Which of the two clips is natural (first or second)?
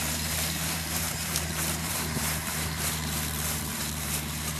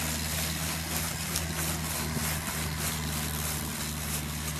second